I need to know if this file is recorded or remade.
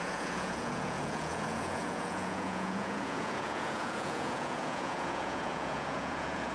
remade